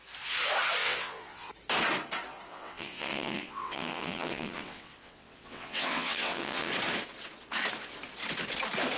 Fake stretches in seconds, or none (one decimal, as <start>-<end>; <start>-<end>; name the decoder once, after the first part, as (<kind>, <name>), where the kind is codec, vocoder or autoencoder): 0.8-1.5 (vocoder, WaveNeXt); 2.5-6.7